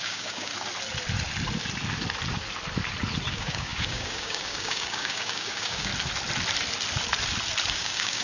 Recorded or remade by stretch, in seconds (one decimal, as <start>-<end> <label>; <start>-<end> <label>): 0.0-0.5 remade; 0.5-3.3 recorded; 3.3-5.9 remade; 5.9-7.7 recorded; 7.7-8.2 remade